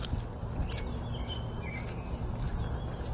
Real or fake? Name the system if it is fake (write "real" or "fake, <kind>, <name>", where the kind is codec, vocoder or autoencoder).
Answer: real